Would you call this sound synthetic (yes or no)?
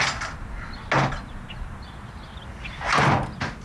no